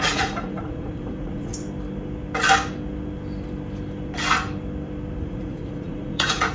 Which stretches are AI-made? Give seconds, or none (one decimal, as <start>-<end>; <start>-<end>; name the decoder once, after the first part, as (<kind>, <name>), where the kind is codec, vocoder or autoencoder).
0.0-1.5 (vocoder, Vocos); 5.2-6.5